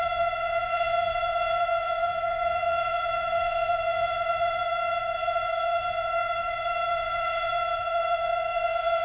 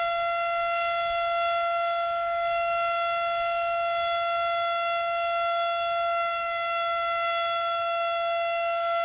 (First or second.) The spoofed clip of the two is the first